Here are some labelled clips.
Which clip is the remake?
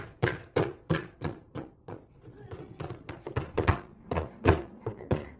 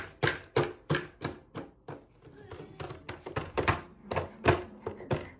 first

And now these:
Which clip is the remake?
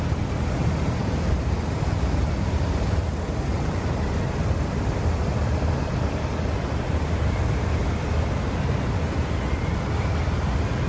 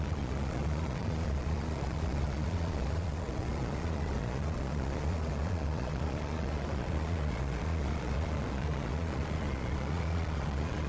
second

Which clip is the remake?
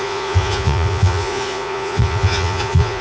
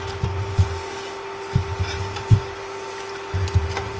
first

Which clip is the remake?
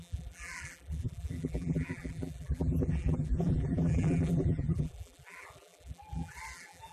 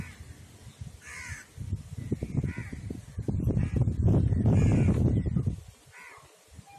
first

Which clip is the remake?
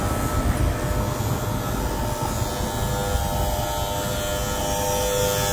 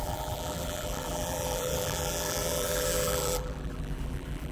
second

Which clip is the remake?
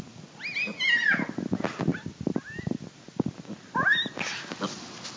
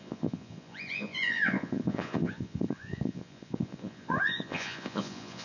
second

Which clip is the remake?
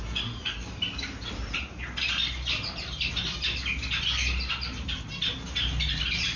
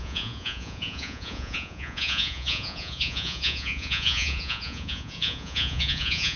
second